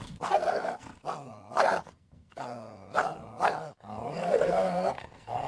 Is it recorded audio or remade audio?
remade